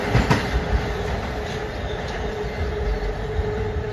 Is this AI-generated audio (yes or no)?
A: no